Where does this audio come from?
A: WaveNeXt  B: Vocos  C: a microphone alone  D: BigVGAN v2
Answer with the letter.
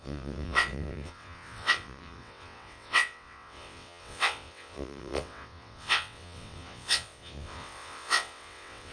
A